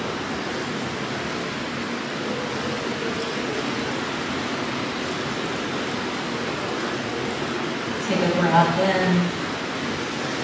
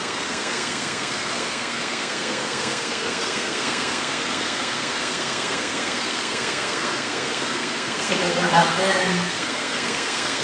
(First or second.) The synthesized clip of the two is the second